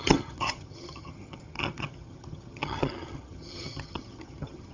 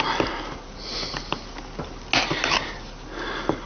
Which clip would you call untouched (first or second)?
second